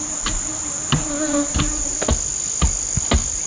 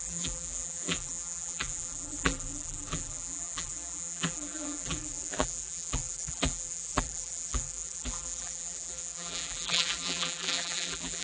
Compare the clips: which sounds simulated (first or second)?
second